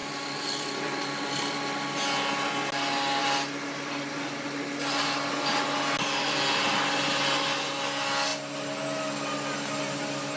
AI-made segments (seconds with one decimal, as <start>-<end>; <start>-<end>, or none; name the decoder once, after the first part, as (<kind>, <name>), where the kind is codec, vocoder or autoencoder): 0.0-1.3 (vocoder, BigVGAN v2)